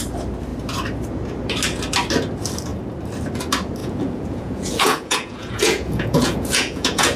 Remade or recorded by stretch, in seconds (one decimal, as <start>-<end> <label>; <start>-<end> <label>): 0.0-3.8 recorded; 3.8-7.2 remade